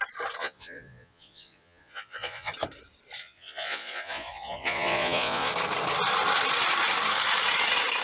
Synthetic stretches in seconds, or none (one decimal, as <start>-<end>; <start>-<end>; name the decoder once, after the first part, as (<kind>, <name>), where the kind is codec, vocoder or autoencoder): 0.4-2.5 (vocoder, Vocos); 3.2-5.5